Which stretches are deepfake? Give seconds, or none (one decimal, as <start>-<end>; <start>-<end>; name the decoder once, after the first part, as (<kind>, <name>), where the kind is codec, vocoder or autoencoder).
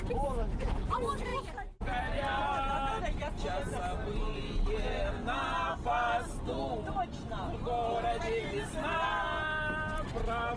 none